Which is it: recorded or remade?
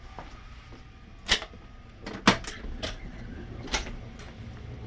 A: recorded